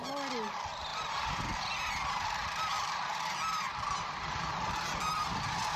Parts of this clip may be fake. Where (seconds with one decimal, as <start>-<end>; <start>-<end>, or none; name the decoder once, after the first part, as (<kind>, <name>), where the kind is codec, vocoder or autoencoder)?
0.9-1.6 (vocoder, BigVGAN v2)